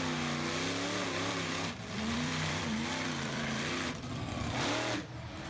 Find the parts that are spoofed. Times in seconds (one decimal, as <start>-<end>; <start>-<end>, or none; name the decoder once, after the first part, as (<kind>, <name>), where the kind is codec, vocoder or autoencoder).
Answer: 1.0-4.2 (vocoder, BigVGAN v2)